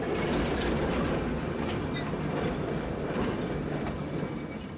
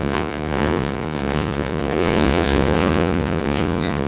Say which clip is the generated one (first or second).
second